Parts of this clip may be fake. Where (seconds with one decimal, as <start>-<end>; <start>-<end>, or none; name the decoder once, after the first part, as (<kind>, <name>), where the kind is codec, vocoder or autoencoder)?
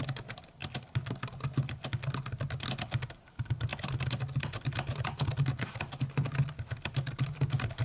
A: none